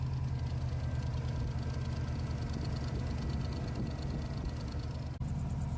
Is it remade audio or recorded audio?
recorded